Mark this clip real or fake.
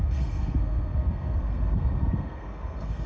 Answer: fake